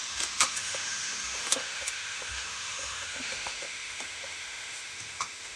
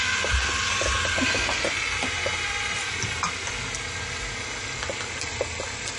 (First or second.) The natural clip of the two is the second